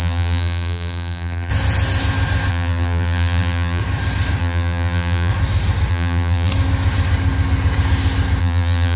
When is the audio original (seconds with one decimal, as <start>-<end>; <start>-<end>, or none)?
1.5-2.5; 3.8-4.4; 5.3-5.9; 6.5-8.4